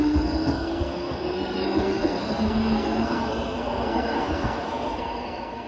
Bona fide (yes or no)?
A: no